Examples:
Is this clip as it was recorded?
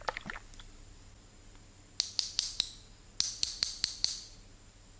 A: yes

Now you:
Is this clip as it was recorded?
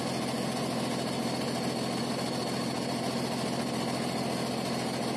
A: yes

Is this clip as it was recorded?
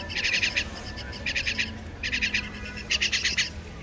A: yes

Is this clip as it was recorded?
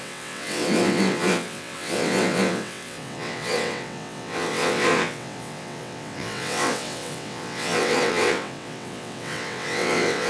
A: no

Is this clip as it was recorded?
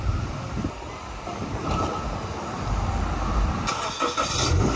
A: yes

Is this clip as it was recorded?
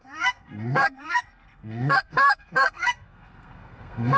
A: no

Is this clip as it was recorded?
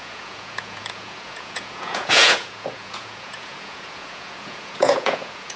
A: no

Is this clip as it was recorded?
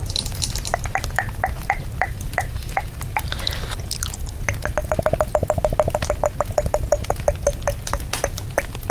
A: yes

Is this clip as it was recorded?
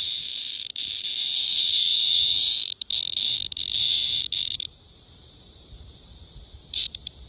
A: no